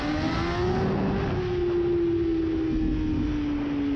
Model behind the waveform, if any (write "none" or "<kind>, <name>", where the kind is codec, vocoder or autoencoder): none